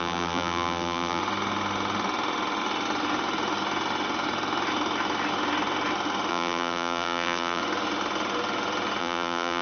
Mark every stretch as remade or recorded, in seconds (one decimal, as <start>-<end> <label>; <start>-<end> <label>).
0.0-1.2 remade; 1.2-6.3 recorded; 6.3-7.6 remade; 7.6-9.0 recorded; 9.0-9.6 remade